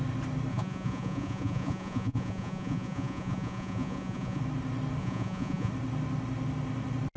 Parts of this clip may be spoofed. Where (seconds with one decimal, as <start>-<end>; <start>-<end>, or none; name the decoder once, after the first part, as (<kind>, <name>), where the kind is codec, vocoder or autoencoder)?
0.5-4.4 (vocoder, Vocos); 5.0-5.7